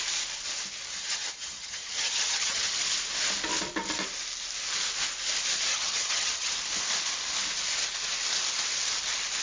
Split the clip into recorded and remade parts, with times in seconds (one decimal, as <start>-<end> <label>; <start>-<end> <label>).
0.0-1.0 recorded; 1.0-2.7 remade; 2.7-5.7 recorded; 5.7-6.5 remade; 6.5-9.4 recorded